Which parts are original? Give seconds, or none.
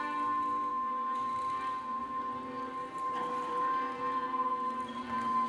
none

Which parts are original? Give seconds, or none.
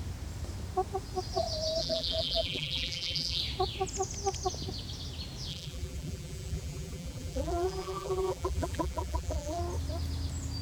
0.0-1.8; 3.4-5.5; 9.6-10.6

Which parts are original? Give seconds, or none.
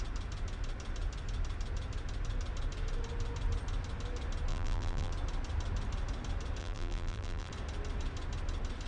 0.0-4.5; 5.1-6.6; 7.5-8.9